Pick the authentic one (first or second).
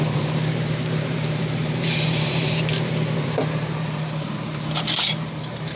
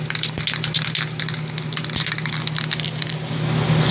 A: second